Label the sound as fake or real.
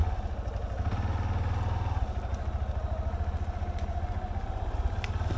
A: real